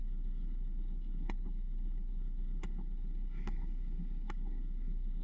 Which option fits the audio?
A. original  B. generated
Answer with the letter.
B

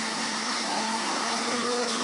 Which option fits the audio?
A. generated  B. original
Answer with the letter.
A